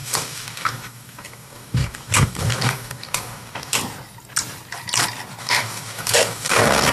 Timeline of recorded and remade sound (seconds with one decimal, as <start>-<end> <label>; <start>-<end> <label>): 0.0-3.8 remade; 3.8-5.4 recorded; 5.4-6.9 remade